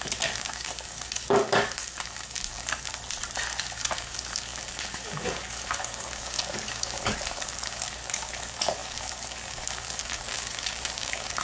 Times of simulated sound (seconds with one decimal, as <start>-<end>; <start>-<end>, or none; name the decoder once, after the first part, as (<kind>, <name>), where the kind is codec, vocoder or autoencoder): 0.0-2.9 (codec, DAC); 3.6-11.4